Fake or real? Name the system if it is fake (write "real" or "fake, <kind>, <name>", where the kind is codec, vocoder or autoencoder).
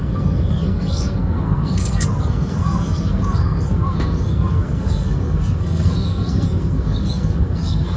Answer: fake, codec, SNAC